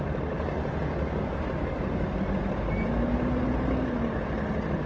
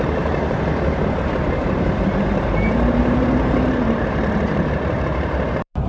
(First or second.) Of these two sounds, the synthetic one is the second